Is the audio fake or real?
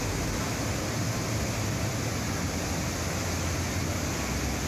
real